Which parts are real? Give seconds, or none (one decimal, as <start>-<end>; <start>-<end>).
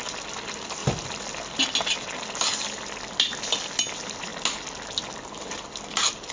0.0-6.3